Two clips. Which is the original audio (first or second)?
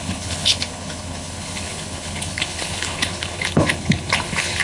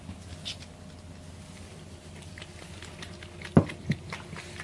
second